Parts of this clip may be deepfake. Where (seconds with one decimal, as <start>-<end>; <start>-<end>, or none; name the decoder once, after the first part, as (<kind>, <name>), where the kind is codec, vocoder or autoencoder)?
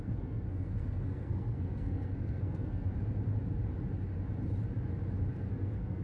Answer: 0.0-2.9 (codec, SNAC); 5.3-6.0